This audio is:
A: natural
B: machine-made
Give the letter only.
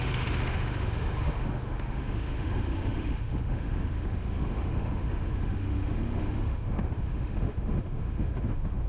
B